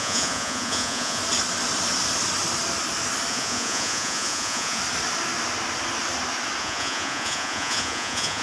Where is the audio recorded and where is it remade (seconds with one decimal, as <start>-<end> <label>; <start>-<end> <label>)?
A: 0.0-1.2 remade; 1.2-3.3 recorded; 3.3-4.8 remade; 4.8-6.6 recorded; 6.6-8.4 remade